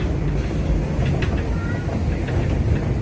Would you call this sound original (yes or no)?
yes